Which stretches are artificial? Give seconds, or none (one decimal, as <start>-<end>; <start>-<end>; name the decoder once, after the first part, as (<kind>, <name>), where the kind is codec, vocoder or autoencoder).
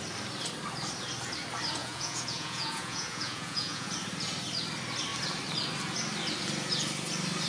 1.8-3.9 (vocoder, Vocos)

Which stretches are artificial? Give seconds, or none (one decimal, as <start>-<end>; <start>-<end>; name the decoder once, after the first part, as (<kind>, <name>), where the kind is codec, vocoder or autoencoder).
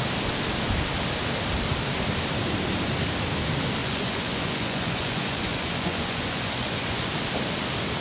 3.8-7.1 (vocoder, Vocos)